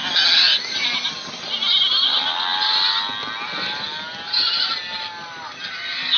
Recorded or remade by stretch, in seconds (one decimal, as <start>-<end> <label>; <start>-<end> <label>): 0.0-6.2 recorded